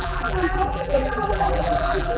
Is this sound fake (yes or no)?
yes